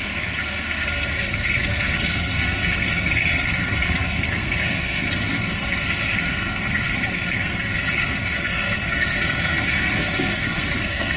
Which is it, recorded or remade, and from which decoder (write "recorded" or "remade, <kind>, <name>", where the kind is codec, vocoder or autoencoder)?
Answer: remade, codec, SNAC